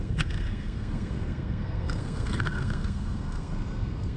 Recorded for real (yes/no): no